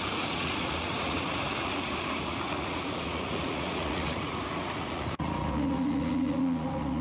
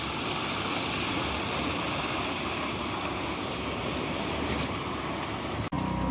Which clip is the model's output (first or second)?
first